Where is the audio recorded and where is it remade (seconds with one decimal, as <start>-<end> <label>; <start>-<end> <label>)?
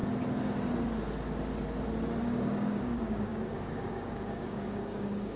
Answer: 0.0-2.2 recorded; 2.2-5.4 remade